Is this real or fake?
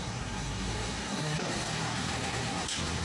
fake